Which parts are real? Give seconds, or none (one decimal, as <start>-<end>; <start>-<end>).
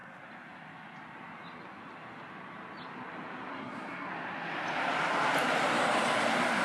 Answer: 0.0-3.5; 4.1-6.6